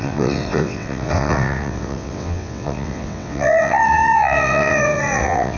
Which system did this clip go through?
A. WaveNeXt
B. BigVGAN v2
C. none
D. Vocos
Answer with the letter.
A